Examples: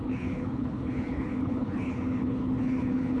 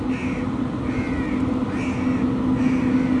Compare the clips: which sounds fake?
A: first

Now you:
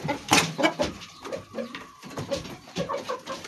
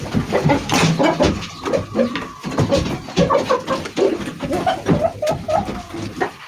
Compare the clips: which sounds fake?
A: first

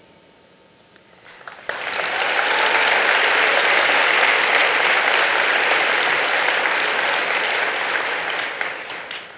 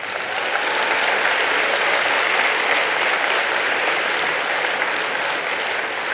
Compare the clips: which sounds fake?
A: first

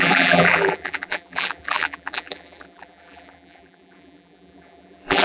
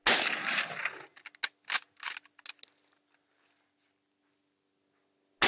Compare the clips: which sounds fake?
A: first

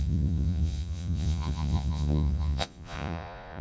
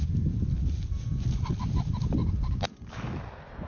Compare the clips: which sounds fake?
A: first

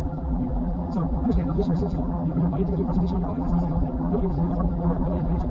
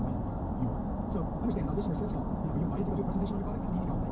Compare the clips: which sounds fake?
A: first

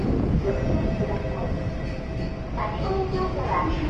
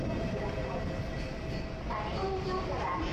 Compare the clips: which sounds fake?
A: second